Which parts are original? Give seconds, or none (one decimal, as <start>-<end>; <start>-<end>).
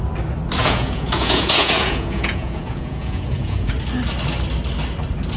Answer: 0.0-0.6; 3.7-5.4